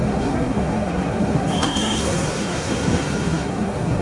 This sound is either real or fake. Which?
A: fake